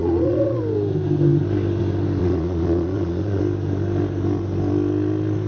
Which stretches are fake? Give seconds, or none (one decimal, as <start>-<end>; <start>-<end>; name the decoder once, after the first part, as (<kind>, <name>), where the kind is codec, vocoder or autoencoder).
0.0-0.6 (vocoder, Vocos); 2.2-3.4